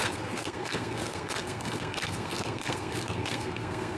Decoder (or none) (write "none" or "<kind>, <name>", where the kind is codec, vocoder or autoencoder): codec, SNAC